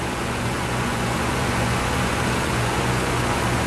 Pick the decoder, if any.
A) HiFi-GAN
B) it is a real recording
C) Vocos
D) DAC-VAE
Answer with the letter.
C